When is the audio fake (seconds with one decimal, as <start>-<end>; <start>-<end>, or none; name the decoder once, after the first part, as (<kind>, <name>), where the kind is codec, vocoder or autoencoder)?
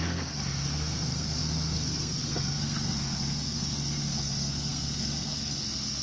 0.0-6.0 (codec, SNAC)